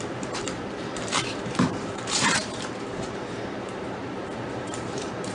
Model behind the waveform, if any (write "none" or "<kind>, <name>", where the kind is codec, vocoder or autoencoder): vocoder, BigVGAN v2